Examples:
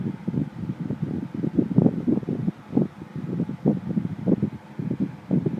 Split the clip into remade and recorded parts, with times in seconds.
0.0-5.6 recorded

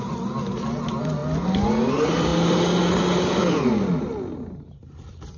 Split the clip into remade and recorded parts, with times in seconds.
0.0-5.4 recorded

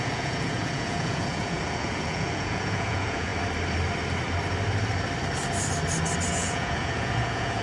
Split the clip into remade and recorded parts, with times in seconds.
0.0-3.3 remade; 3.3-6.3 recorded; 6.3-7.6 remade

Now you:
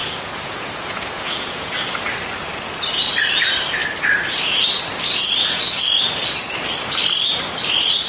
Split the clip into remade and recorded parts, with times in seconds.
0.0-2.0 remade; 2.0-5.4 recorded; 5.4-6.0 remade; 6.0-8.1 recorded

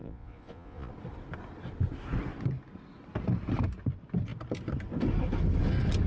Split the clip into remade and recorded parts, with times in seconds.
0.0-0.9 remade; 0.9-6.1 recorded

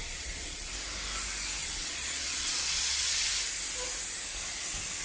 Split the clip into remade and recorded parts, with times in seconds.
0.0-0.7 remade; 0.7-1.6 recorded; 1.6-3.3 remade; 3.3-5.0 recorded